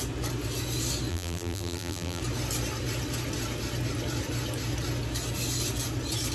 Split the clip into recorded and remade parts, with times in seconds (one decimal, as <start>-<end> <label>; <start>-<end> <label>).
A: 0.0-1.1 recorded; 1.1-2.2 remade; 2.2-6.3 recorded